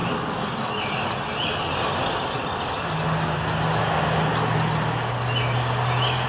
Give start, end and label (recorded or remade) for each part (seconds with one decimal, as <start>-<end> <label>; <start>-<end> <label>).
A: 0.0-6.3 recorded